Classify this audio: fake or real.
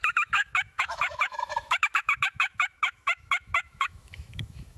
fake